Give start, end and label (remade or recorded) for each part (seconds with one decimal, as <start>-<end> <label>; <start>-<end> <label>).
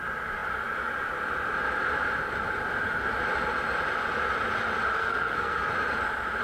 0.0-5.0 recorded; 5.0-5.7 remade; 5.7-6.4 recorded